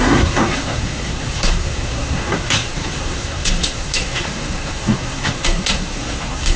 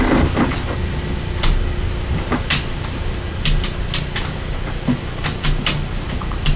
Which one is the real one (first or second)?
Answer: second